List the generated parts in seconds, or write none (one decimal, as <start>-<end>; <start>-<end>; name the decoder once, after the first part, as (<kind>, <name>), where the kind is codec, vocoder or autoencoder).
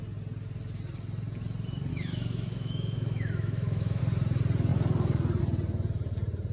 1.9-4.0 (autoencoder, DAC-VAE)